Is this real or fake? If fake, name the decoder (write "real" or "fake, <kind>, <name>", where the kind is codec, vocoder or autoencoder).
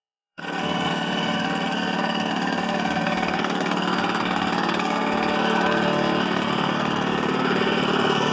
fake, codec, SNAC